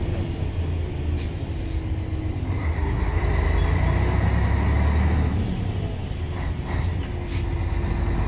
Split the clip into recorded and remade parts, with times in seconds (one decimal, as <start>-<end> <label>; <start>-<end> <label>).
0.0-2.6 recorded; 2.6-3.2 remade; 3.2-8.3 recorded